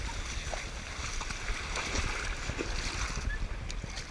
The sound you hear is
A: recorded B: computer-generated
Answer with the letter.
A